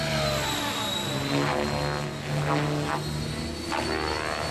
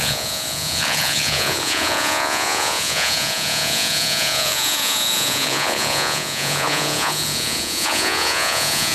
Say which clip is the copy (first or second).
second